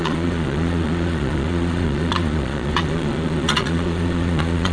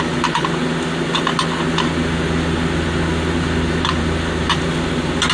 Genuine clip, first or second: second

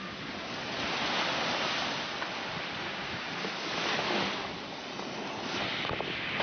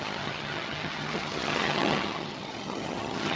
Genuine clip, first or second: first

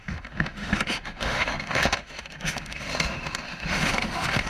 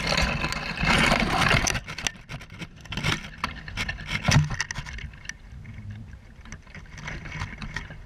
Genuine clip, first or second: second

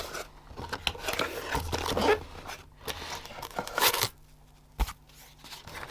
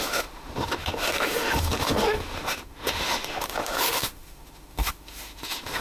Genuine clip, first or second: first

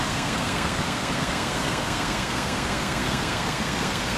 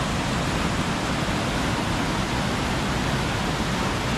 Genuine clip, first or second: second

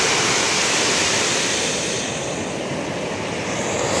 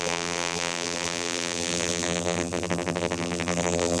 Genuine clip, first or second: first